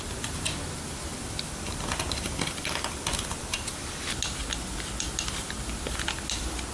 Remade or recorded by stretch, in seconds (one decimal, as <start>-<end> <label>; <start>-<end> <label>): 0.0-1.1 recorded; 1.1-4.0 remade; 4.0-6.7 recorded